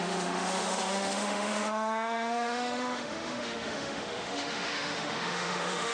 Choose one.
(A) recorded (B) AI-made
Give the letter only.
B